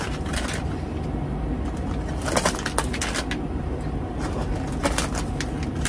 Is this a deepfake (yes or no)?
no